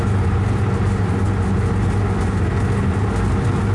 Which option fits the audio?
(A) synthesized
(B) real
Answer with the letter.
B